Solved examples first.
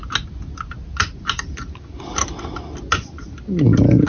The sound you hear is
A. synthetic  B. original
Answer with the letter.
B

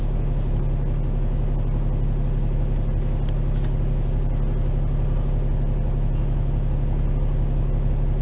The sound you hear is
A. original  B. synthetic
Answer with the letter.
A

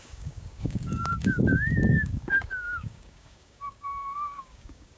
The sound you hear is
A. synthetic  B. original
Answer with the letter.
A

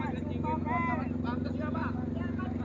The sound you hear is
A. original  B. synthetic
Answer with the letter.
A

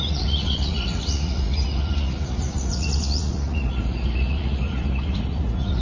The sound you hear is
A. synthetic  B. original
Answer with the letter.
A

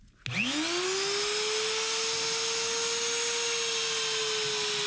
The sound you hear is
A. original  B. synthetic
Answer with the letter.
A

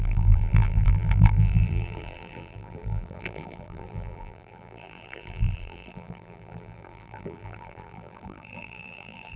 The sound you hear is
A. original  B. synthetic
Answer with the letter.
B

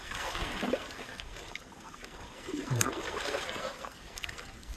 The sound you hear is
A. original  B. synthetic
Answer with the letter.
B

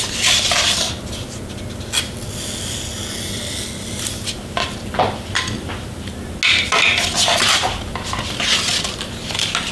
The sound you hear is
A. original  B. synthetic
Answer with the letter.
A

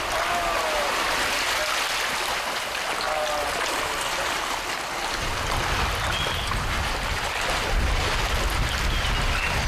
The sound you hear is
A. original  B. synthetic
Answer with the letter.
A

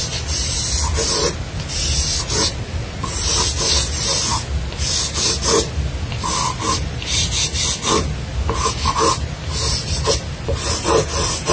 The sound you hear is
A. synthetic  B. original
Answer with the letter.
B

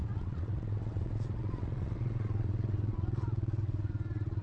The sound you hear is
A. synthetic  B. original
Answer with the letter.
A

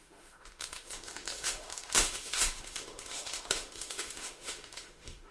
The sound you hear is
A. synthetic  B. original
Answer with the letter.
A